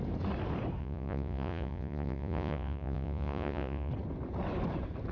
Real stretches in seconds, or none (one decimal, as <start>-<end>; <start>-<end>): 0.0-0.8; 3.9-5.1